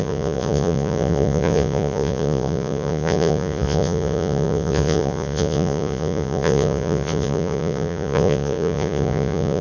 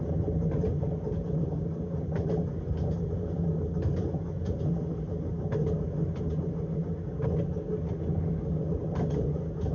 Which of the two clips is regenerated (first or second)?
first